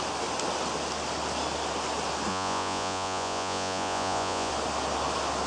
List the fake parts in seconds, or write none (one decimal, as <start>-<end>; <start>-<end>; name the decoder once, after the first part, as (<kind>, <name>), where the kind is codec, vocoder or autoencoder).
2.3-4.5 (vocoder, Vocos)